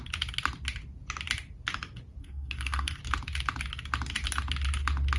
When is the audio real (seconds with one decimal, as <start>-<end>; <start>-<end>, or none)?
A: 0.0-2.2; 3.0-5.2